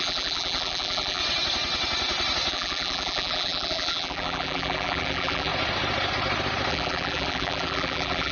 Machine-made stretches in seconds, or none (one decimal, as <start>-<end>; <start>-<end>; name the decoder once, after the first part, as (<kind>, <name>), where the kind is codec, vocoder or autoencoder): 0.0-1.2 (vocoder, BigVGAN v2); 2.5-5.5; 6.7-8.3